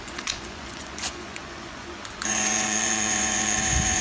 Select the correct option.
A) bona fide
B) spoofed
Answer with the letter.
B